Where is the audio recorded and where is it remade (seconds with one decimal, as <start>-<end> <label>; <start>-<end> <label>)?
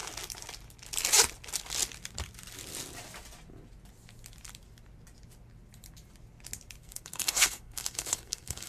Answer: 0.0-6.8 recorded; 6.8-8.7 remade